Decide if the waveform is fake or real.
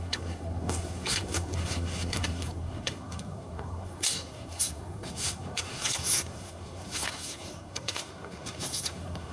fake